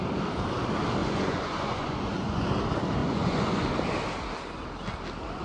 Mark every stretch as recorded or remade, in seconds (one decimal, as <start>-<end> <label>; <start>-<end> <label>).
0.0-1.0 recorded; 1.0-2.5 remade; 2.5-3.0 recorded; 3.0-3.7 remade; 3.7-5.4 recorded